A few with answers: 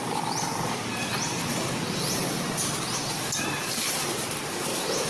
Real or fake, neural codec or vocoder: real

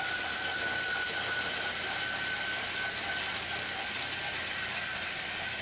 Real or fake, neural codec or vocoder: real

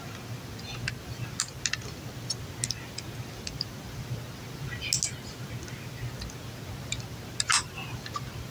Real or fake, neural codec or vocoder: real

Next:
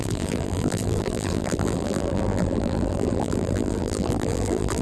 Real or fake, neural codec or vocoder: fake, vocoder, BigVGAN v2